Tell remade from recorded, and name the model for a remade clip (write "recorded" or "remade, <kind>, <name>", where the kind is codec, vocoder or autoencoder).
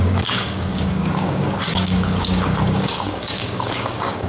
remade, codec, DAC